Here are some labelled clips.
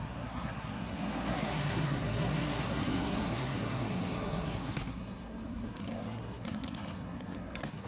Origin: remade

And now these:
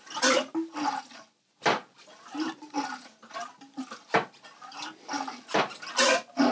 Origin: recorded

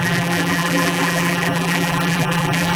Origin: remade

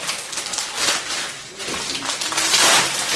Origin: remade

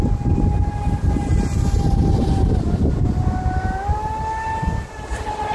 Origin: recorded